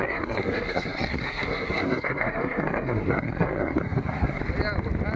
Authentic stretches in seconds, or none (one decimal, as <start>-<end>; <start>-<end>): 4.4-5.2